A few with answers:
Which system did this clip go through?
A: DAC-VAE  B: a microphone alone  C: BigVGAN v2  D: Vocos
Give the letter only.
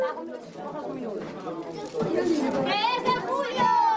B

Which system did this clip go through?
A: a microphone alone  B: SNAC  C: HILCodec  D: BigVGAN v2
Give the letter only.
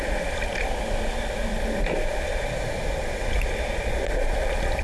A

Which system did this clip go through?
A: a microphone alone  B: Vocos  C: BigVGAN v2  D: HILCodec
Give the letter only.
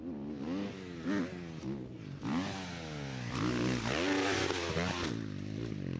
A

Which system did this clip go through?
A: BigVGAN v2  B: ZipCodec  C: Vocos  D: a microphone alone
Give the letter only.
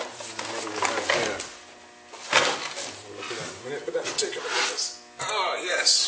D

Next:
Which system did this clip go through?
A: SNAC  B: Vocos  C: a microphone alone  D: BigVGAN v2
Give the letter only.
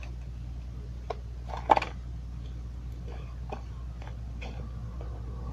C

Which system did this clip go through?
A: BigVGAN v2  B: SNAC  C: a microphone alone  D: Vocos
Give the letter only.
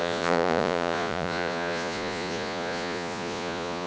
D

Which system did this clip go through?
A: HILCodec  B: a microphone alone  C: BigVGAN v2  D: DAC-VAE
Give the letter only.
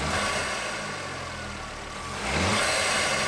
B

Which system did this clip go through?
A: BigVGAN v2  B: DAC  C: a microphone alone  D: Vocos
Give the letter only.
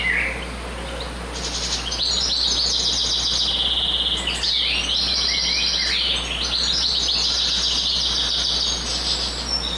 C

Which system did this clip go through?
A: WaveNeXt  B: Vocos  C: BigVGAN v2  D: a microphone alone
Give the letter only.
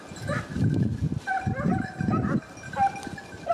D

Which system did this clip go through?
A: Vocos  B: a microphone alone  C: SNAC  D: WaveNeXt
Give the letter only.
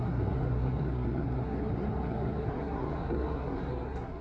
C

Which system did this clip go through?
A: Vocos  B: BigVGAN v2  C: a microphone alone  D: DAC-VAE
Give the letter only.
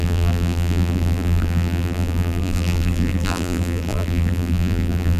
B